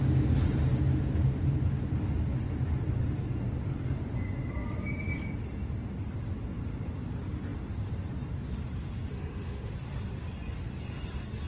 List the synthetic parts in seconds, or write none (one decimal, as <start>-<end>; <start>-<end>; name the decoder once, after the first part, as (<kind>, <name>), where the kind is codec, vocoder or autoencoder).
9.1-9.7 (autoencoder, DAC-VAE)